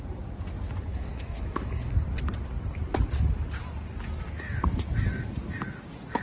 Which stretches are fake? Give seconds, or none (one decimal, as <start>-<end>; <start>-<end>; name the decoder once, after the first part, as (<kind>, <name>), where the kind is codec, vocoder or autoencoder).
0.9-1.9 (autoencoder, DAC-VAE)

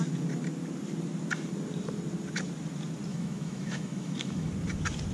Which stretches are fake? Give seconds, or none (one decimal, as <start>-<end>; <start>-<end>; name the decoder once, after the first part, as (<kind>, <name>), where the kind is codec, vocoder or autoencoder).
3.1-4.5 (autoencoder, DAC-VAE)

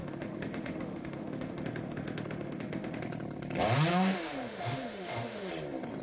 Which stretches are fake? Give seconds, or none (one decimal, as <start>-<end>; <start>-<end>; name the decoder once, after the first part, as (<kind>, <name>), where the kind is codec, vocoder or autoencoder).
0.0-3.0 (autoencoder, DAC-VAE); 3.9-5.5

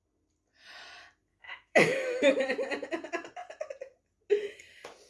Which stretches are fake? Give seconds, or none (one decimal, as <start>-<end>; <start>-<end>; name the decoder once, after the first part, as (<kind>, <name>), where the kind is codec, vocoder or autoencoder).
1.3-2.3 (autoencoder, DAC-VAE)

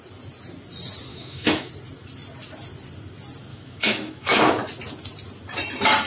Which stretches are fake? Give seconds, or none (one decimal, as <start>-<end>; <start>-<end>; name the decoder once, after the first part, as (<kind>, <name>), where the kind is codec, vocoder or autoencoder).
1.1-1.7 (autoencoder, DAC-VAE); 3.5-4.5

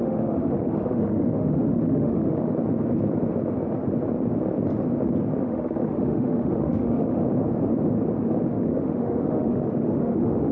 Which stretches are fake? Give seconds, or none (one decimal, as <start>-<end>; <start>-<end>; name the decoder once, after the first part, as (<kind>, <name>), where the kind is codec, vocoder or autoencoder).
0.0-2.5 (autoencoder, DAC-VAE); 5.4-7.2; 8.5-10.5